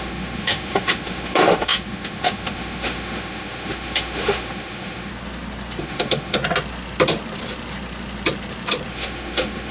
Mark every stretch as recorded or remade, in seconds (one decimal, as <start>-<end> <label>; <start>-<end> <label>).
0.0-5.1 remade; 5.1-5.8 recorded; 5.8-6.4 remade; 6.4-8.9 recorded; 8.9-9.7 remade